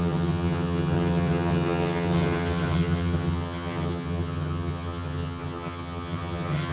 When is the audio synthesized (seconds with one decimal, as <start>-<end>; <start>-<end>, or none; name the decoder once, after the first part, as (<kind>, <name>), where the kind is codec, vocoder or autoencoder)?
0.0-6.7 (vocoder, HiFi-GAN)